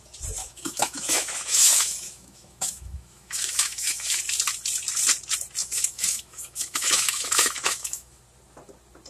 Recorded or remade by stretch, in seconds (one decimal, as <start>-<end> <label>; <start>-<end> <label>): 0.0-0.4 recorded; 0.4-4.2 remade; 4.2-5.6 recorded; 5.6-8.2 remade; 8.2-9.1 recorded